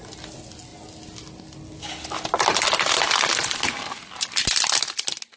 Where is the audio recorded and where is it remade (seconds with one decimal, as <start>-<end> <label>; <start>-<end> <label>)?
0.0-5.4 recorded